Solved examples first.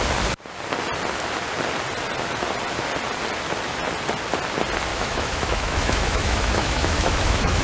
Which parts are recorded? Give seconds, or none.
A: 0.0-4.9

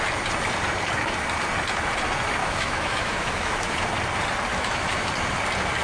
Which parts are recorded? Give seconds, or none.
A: 0.0-2.4; 3.8-4.5; 5.1-5.8

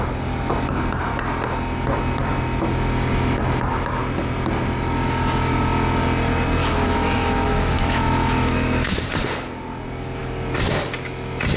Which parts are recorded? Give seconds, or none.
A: 0.0-6.6; 9.0-11.6

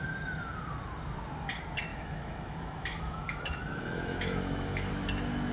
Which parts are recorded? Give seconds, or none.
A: 0.0-1.9; 4.9-5.5